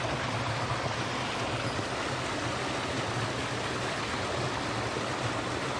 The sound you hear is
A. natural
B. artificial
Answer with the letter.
A